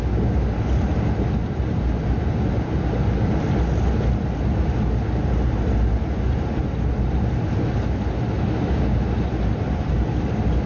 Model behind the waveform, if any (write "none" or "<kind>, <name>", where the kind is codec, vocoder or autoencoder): none